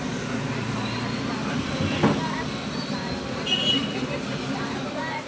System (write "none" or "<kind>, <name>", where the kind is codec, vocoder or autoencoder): none